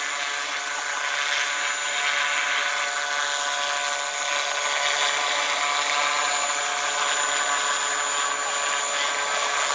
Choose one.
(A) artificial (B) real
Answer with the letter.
B